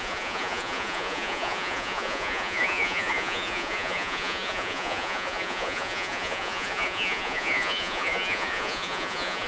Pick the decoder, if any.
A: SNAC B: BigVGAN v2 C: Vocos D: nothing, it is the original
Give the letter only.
C